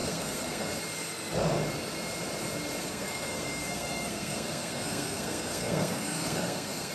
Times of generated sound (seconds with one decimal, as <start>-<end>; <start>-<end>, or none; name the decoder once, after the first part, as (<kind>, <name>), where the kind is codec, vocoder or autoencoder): 0.0-0.7 (codec, SNAC); 2.8-6.9